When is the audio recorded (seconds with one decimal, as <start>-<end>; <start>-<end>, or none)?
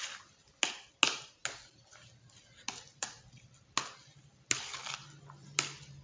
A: 0.0-6.0